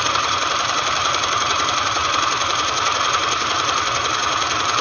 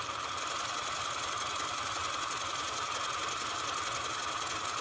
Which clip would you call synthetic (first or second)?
first